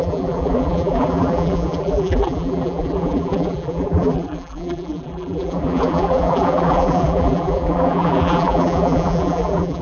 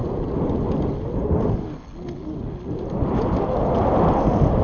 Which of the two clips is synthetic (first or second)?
first